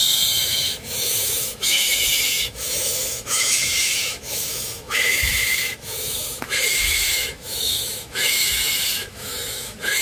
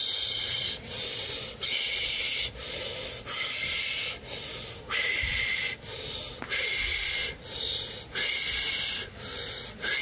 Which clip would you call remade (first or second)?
first